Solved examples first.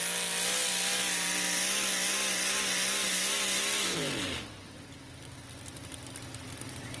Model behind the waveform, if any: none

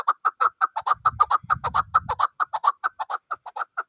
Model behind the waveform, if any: none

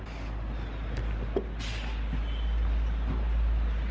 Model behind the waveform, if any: none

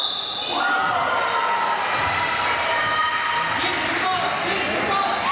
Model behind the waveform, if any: none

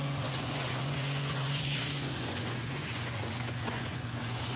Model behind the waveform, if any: vocoder, Vocos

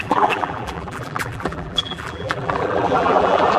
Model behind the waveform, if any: vocoder, BigVGAN v2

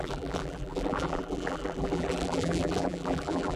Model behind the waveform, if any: vocoder, BigVGAN v2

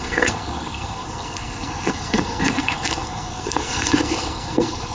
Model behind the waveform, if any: codec, SNAC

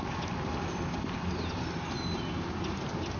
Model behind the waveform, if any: none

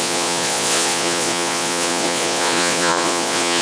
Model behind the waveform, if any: vocoder, Vocos